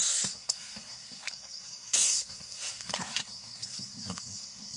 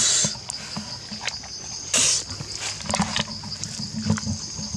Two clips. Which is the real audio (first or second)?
second